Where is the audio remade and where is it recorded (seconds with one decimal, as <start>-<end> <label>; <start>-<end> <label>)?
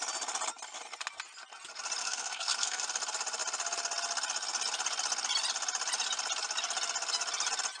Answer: 0.0-2.0 recorded; 2.0-2.8 remade; 2.8-7.8 recorded